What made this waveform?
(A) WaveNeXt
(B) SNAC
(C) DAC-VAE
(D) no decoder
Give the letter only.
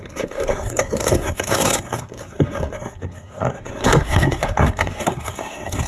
B